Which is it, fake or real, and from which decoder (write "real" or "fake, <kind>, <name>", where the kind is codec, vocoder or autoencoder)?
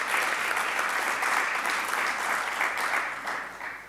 real